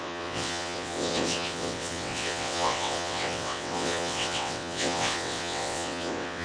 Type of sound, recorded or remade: remade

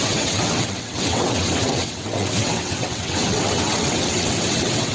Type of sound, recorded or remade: remade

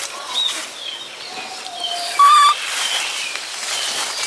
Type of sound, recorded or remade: recorded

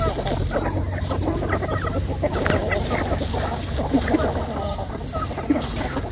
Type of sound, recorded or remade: recorded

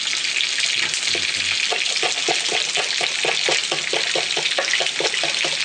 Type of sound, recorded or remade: recorded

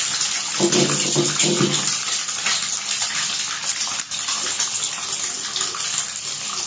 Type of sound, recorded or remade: recorded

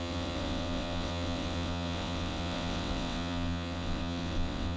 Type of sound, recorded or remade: remade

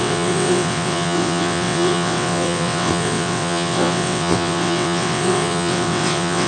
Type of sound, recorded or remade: remade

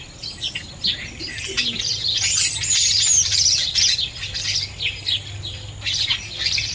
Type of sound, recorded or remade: recorded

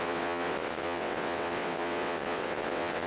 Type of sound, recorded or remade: remade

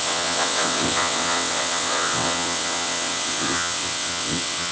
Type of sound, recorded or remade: remade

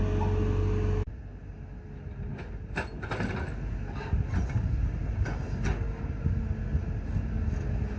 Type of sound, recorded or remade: recorded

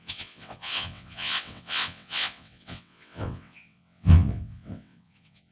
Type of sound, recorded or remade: remade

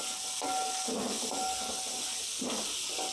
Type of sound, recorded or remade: recorded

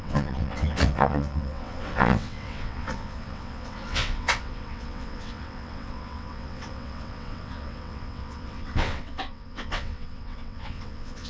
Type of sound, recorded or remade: remade